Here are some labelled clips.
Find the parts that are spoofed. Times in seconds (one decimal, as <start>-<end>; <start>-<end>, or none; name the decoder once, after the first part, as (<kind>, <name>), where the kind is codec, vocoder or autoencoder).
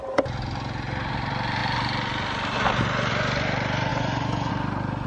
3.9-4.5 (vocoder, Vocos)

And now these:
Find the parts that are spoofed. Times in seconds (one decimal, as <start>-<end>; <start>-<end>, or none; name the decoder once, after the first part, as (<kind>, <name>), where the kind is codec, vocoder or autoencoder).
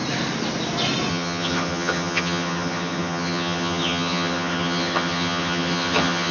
1.1-6.3 (vocoder, HiFi-GAN)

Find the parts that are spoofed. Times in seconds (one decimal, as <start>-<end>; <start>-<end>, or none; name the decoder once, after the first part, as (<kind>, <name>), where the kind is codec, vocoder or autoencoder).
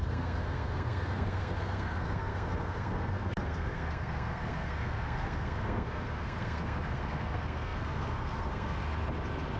0.0-8.8 (codec, SNAC)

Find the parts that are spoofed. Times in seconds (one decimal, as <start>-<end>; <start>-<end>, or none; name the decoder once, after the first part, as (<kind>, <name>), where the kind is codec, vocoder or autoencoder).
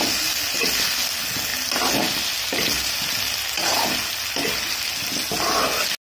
none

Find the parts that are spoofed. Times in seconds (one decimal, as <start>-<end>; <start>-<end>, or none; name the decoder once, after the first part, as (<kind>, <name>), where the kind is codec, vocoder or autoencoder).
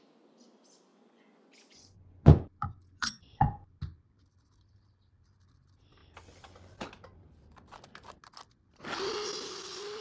0.9-3.8 (vocoder, Vocos)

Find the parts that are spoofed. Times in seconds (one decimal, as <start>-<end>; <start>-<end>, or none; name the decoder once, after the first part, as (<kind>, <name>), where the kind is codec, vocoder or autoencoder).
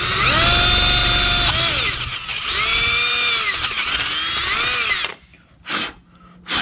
2.3-4.1 (vocoder, BigVGAN v2)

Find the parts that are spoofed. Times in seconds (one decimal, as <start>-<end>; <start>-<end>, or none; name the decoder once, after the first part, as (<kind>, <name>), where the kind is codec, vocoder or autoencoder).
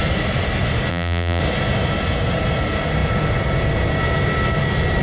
0.9-1.4 (vocoder, BigVGAN v2)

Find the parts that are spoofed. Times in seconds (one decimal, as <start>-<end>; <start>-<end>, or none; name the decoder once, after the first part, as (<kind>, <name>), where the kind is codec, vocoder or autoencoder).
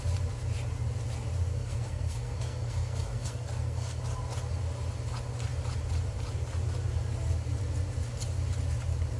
1.5-4.0 (codec, SNAC)